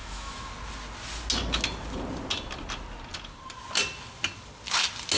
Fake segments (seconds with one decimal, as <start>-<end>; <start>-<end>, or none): 0.0-0.5